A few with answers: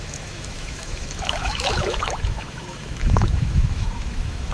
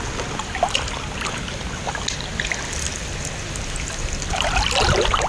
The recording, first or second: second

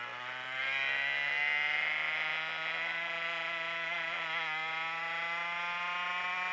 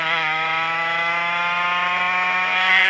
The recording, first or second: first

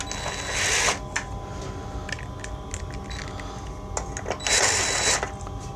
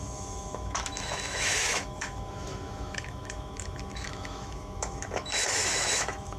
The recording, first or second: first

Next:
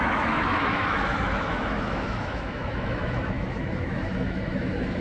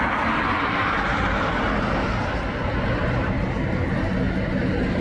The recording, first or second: second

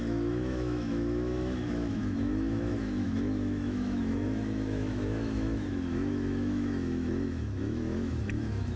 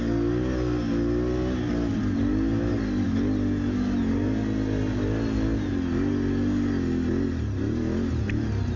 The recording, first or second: second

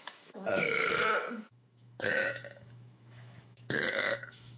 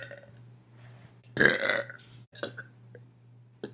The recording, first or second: second